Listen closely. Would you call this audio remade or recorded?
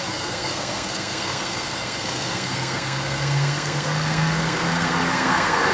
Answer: remade